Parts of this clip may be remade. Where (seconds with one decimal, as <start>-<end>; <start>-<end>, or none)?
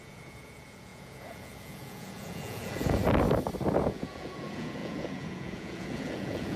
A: 0.0-3.0; 3.8-6.6